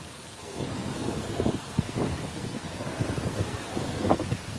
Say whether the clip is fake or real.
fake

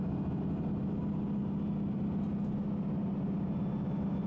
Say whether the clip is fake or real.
real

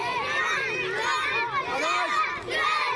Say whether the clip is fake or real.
real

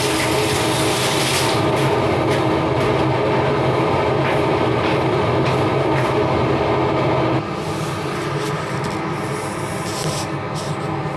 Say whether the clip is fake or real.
real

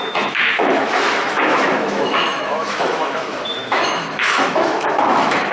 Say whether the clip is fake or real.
fake